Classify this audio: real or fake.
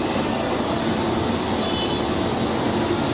real